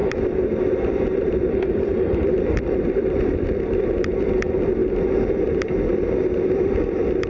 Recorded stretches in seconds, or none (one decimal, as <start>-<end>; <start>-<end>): 3.8-7.3

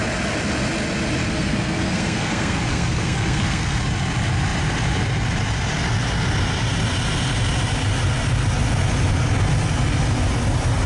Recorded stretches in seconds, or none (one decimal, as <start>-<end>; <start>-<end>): 0.0-1.3; 3.8-10.9

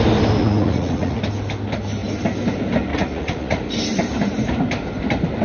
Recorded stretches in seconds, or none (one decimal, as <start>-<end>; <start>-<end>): 0.0-0.4; 1.2-2.9; 3.6-5.4

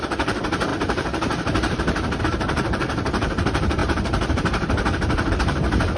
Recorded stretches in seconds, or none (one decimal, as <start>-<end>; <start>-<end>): none

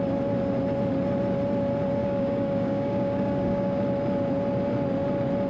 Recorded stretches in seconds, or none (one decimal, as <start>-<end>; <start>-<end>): 0.0-2.0; 3.8-5.5